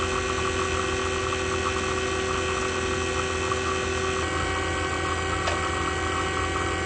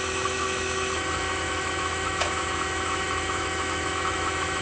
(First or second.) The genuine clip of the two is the first